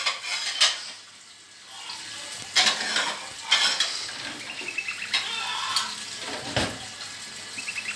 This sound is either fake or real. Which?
real